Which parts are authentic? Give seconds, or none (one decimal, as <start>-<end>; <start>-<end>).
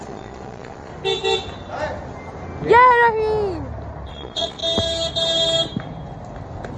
0.9-4.1; 4.6-6.8